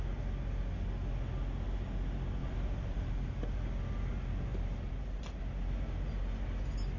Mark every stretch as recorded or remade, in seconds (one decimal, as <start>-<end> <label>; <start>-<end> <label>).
0.0-2.4 recorded; 2.4-3.1 remade; 3.1-4.5 recorded; 4.5-5.4 remade; 5.4-7.0 recorded